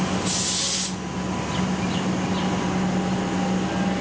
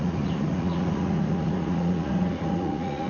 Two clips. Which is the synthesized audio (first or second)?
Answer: second